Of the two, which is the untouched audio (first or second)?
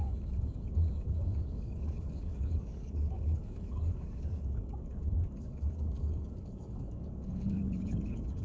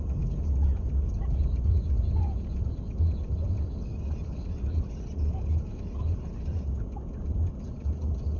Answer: second